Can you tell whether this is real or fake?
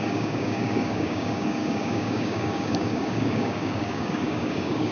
fake